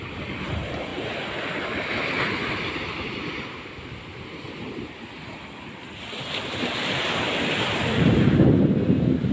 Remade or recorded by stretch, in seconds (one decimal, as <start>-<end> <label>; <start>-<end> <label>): 0.0-9.3 recorded

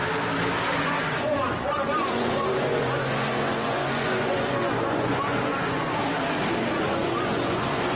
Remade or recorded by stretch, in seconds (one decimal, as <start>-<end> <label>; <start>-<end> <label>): 0.0-0.8 recorded; 0.8-6.0 remade; 6.0-6.7 recorded; 6.7-8.0 remade

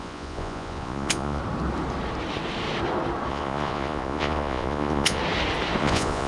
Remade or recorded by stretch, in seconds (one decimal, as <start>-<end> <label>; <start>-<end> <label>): 0.0-1.4 remade; 1.4-3.3 recorded; 3.3-5.2 remade; 5.2-5.8 recorded; 5.8-6.3 remade